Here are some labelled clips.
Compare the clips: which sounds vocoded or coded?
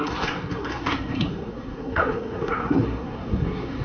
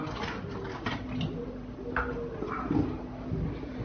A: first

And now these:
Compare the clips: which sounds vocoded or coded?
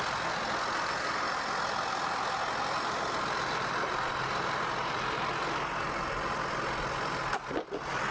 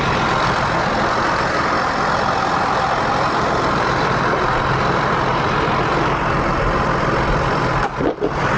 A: second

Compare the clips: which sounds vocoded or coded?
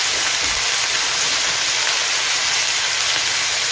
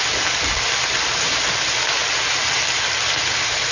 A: second